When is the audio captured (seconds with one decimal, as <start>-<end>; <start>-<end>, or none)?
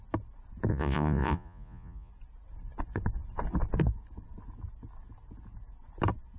0.0-0.7; 2.1-6.4